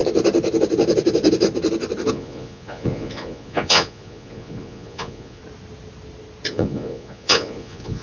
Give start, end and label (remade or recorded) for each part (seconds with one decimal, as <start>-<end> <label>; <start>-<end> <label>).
0.0-2.1 recorded; 2.1-5.4 remade; 5.4-6.5 recorded; 6.5-8.0 remade

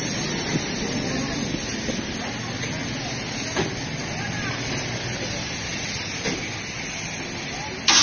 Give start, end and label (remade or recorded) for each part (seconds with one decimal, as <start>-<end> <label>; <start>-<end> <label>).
0.0-8.0 recorded

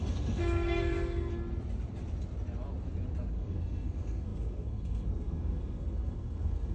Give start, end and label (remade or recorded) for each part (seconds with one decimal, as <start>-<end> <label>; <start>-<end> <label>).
0.0-1.3 remade; 1.3-3.3 recorded; 3.3-6.7 remade

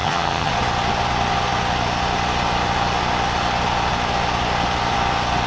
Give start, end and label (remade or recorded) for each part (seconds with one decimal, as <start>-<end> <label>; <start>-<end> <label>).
0.0-0.5 remade; 0.5-5.5 recorded

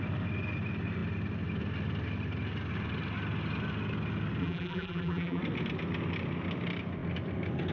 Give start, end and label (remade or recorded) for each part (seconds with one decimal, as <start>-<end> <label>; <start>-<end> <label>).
0.0-4.4 recorded; 4.4-5.4 remade; 5.4-7.7 recorded

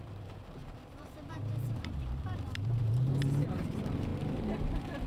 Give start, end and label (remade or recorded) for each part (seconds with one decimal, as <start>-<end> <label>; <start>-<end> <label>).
0.0-5.1 remade

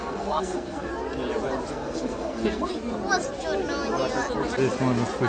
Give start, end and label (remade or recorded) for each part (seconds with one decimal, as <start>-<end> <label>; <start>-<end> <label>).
0.0-0.9 remade; 0.9-1.7 recorded; 1.7-2.7 remade; 2.7-5.3 recorded

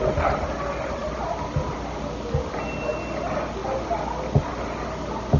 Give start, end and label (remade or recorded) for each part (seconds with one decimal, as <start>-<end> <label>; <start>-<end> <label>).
0.0-5.4 recorded